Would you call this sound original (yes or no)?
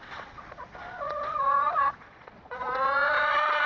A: no